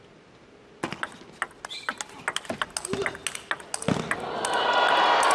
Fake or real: real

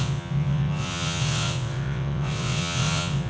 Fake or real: fake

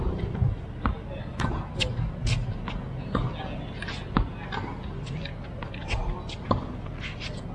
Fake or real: real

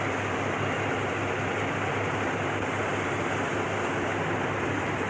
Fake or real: real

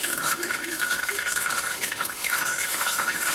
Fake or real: fake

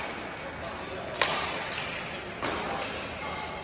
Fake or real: real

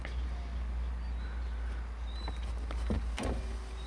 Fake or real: real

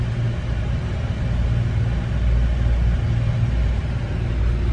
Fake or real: real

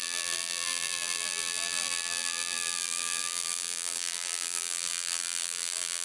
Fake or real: fake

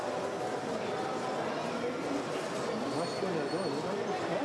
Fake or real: real